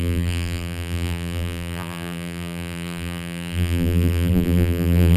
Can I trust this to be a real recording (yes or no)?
no